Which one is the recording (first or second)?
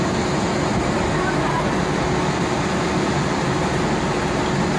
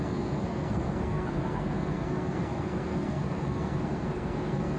first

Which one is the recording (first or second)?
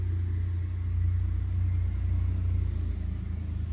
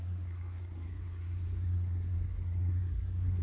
first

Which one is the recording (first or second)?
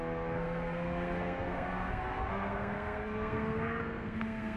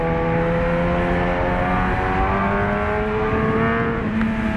second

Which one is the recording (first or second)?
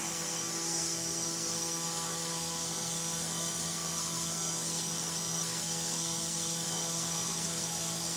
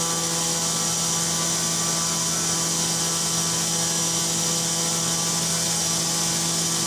second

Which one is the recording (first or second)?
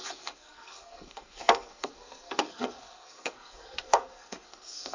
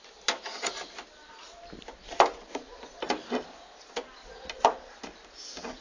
second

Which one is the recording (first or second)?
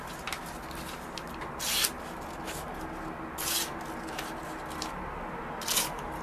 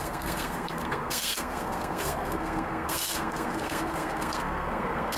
first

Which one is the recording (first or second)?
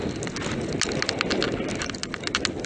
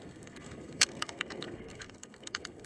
first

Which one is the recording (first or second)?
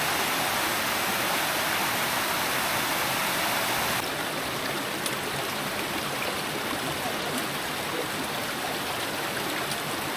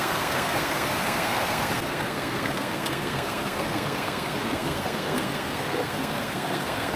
first